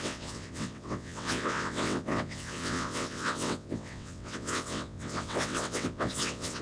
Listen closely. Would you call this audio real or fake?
fake